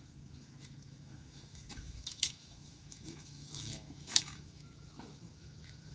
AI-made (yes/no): yes